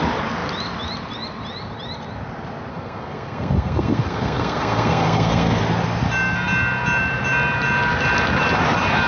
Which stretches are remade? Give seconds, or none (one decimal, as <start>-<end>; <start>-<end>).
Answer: 2.7-5.6